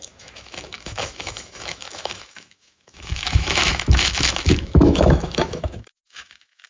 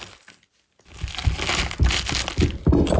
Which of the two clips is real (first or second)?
second